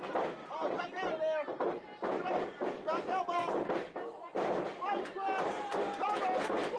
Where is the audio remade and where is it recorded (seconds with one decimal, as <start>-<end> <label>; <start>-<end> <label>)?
0.0-0.4 recorded; 0.4-3.2 remade; 3.2-6.8 recorded